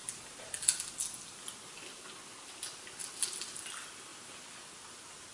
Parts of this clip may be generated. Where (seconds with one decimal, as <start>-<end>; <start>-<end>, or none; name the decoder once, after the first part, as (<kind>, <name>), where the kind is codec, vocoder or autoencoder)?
none